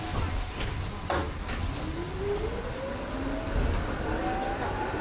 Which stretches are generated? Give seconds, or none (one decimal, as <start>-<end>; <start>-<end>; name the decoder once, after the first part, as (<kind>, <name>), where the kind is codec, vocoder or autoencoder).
none